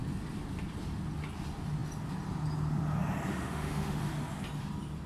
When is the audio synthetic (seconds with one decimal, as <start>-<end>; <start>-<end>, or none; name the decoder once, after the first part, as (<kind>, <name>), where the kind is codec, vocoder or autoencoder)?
3.3-4.0 (autoencoder, DAC-VAE)